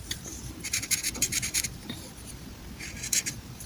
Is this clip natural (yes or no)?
no